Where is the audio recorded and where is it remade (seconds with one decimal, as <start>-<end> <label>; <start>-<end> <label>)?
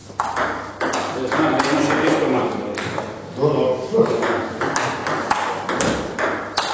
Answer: 0.0-6.7 recorded